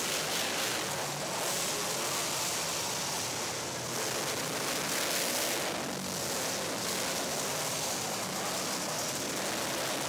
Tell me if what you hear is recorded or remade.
recorded